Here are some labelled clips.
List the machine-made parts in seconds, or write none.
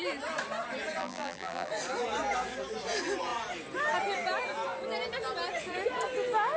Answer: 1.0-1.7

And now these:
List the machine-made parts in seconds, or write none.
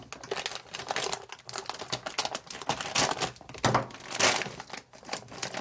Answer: none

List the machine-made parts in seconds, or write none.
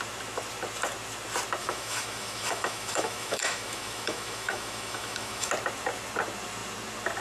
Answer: 1.6-5.5